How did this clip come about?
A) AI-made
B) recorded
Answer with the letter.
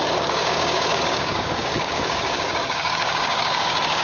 A